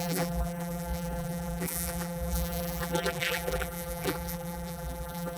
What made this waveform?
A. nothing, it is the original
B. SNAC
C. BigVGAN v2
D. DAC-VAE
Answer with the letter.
C